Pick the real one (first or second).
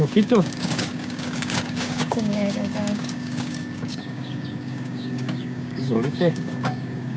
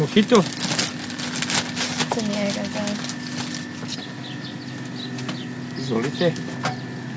second